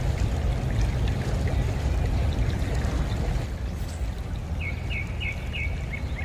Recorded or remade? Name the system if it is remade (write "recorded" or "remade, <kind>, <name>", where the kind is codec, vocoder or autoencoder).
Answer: recorded